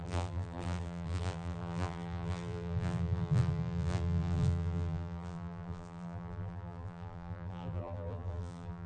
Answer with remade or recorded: remade